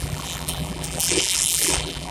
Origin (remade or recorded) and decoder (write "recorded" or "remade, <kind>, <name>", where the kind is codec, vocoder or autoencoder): remade, vocoder, BigVGAN v2